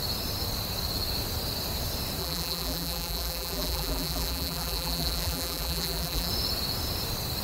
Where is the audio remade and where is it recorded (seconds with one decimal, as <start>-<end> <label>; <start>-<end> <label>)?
0.0-2.2 recorded; 2.2-6.3 remade; 6.3-7.4 recorded